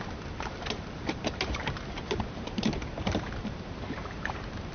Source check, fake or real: fake